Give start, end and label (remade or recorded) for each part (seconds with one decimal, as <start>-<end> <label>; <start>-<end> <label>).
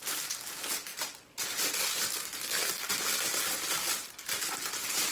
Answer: 0.0-5.1 recorded